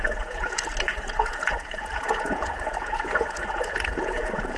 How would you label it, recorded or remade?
remade